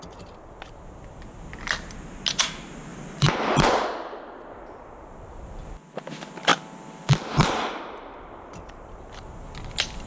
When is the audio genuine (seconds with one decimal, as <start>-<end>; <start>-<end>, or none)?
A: 0.0-2.9; 4.2-6.5; 9.2-10.1